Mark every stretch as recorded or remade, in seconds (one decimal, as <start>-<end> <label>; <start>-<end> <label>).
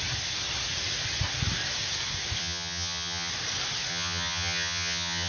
0.0-2.4 recorded; 2.4-3.3 remade; 3.3-3.9 recorded; 3.9-5.3 remade